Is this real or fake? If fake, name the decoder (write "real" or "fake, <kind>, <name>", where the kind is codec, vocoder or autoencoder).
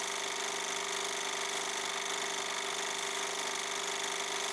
real